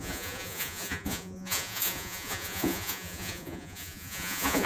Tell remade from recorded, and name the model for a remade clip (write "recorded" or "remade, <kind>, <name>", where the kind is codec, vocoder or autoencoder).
remade, vocoder, Vocos